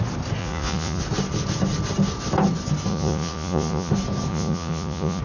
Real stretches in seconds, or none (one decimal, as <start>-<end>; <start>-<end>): 0.0-0.4; 1.0-2.9; 3.9-4.3

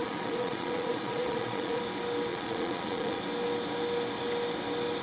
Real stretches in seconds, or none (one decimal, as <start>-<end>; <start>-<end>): 1.8-2.3; 3.2-5.0

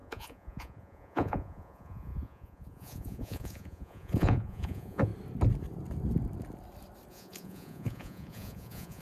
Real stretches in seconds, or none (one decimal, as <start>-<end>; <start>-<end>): 5.1-7.1

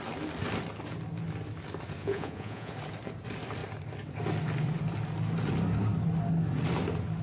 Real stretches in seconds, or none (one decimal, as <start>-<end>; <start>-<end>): 0.0-2.0; 2.7-7.2